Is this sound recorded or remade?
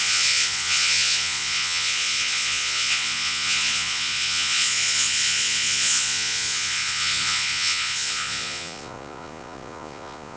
remade